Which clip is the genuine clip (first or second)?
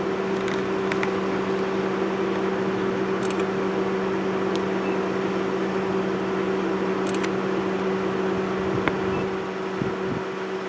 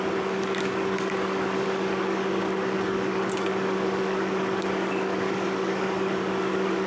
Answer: first